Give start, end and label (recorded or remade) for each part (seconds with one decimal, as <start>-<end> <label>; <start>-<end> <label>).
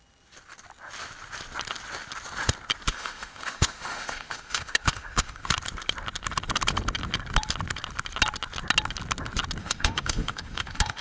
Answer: 0.0-2.9 recorded; 2.9-5.5 remade; 5.5-9.6 recorded; 9.6-11.0 remade